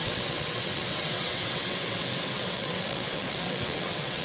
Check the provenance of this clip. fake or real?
fake